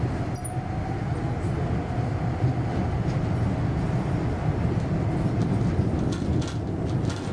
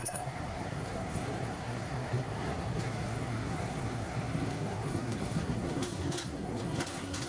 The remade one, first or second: second